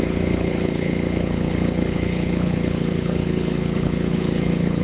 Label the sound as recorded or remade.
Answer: remade